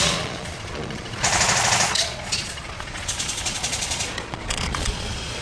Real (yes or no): no